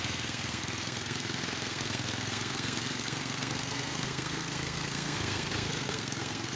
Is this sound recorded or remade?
remade